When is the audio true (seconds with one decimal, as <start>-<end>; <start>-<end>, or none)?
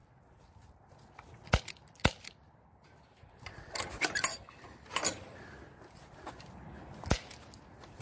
0.0-8.0